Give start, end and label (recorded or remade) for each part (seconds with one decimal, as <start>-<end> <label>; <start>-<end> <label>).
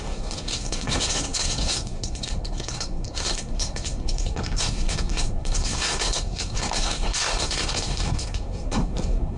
0.0-9.4 remade